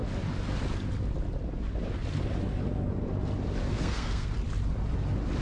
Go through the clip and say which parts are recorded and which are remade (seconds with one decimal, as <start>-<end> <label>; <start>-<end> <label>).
0.0-3.6 recorded; 3.6-4.3 remade; 4.3-5.4 recorded